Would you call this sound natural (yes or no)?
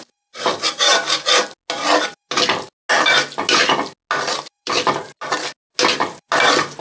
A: yes